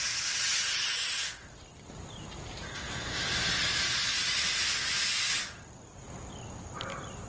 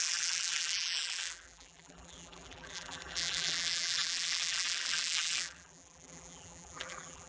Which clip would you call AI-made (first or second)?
second